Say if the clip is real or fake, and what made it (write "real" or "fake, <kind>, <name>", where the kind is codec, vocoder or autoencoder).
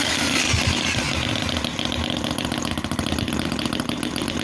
real